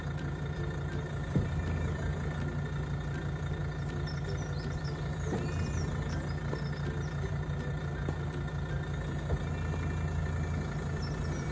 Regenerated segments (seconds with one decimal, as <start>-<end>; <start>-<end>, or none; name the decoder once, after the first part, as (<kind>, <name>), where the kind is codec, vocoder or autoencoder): none

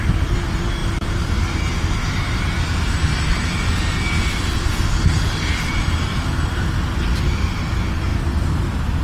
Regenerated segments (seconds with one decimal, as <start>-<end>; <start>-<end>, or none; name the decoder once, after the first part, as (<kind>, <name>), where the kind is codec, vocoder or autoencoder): 0.8-2.4 (vocoder, BigVGAN v2)